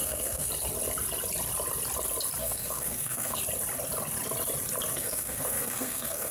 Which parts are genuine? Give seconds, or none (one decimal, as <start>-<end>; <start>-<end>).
0.5-2.4; 3.4-4.9